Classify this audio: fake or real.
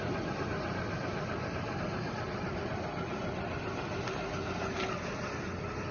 real